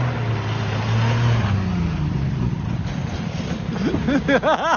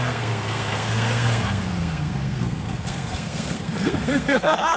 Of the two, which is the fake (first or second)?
second